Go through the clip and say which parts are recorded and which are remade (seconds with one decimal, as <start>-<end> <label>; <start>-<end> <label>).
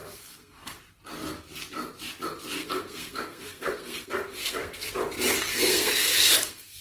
0.0-0.8 remade; 0.8-2.6 recorded; 2.6-4.9 remade; 4.9-5.5 recorded; 5.5-6.8 remade